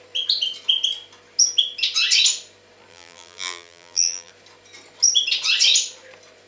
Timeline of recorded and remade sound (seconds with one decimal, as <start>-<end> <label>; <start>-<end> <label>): 0.0-2.9 recorded; 2.9-4.3 remade; 4.3-6.5 recorded